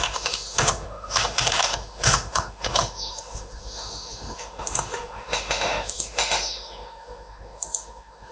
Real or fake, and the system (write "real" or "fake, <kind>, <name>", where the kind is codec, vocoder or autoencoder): fake, autoencoder, DAC-VAE